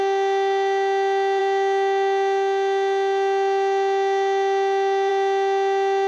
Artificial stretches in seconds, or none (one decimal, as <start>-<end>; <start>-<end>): none